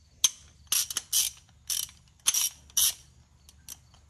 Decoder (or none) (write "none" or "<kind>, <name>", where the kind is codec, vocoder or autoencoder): none